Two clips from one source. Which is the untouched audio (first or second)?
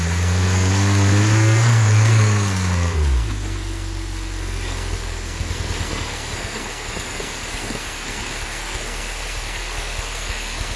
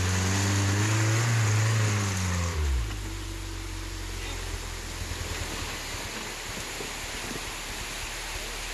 second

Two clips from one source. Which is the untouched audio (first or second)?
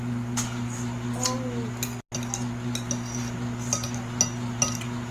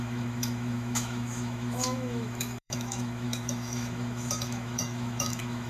first